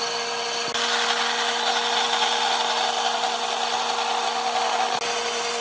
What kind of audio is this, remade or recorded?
recorded